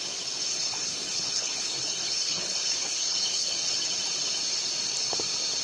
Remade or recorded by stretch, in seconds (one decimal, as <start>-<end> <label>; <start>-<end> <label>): 0.0-0.5 recorded; 0.5-3.6 remade; 3.6-5.6 recorded